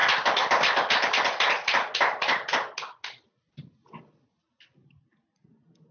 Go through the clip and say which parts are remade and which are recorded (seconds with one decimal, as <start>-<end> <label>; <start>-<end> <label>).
0.0-5.9 recorded